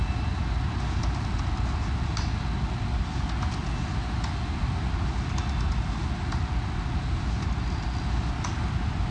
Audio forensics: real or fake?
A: real